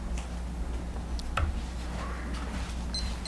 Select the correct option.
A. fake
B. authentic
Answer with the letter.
B